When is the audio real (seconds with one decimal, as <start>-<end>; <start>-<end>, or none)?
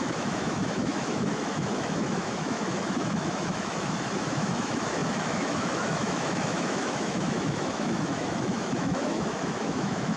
none